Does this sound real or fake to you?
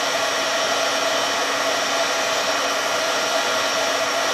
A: real